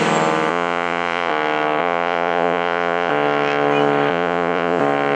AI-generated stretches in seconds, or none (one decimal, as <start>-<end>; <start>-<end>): 0.5-1.3; 1.8-3.1; 4.1-4.8